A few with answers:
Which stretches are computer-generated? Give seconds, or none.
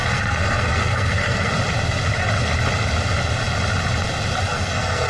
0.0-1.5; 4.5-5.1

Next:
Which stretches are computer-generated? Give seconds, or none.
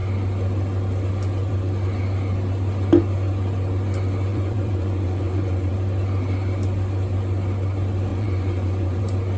4.3-5.7; 8.1-9.0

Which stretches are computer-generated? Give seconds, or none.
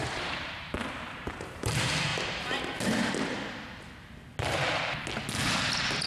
0.0-1.7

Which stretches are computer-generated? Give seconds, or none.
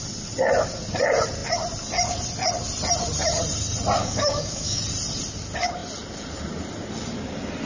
4.0-4.8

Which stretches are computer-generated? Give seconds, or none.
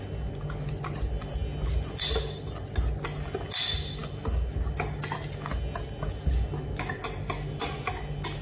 none